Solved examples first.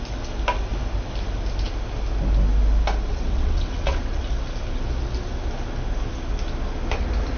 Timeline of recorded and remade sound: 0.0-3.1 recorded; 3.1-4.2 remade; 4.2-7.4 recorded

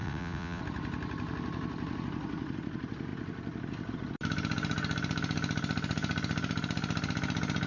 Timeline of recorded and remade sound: 0.0-0.6 remade; 0.6-7.7 recorded

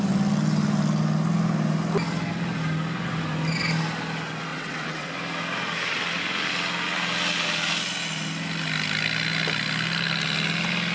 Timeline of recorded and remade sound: 0.0-4.5 recorded; 4.5-5.1 remade; 5.1-10.9 recorded

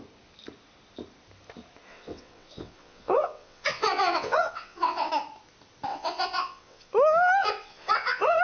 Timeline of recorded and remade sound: 0.0-1.9 recorded; 1.9-5.1 remade; 5.1-5.9 recorded; 5.9-6.9 remade; 6.9-7.4 recorded; 7.4-8.4 remade

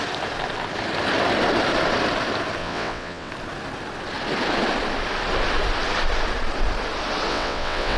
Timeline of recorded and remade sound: 0.0-2.6 recorded; 2.6-3.3 remade; 3.3-7.3 recorded; 7.3-8.0 remade